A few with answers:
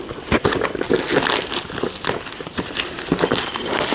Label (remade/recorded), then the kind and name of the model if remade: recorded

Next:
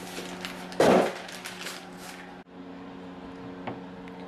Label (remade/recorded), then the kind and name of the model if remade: recorded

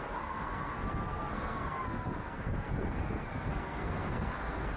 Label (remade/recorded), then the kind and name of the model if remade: remade, codec, SNAC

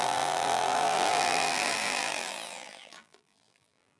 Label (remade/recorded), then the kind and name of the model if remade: remade, vocoder, BigVGAN v2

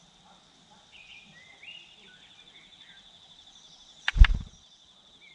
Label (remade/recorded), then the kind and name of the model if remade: remade, vocoder, BigVGAN v2